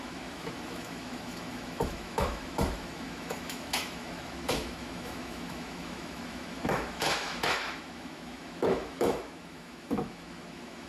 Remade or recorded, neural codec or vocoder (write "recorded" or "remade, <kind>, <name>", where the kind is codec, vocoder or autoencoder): remade, autoencoder, DAC-VAE